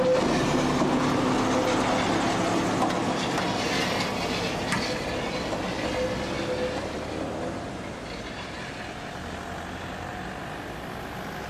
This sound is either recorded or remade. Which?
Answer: recorded